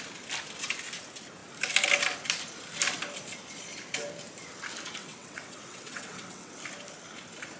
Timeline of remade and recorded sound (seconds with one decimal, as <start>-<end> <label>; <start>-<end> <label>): 0.0-5.0 recorded; 5.0-6.5 remade; 6.5-7.6 recorded

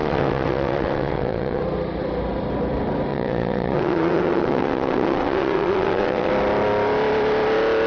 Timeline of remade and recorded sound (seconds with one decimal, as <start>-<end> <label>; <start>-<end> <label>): 0.0-1.6 remade; 1.6-3.1 recorded; 3.1-6.3 remade; 6.3-7.9 recorded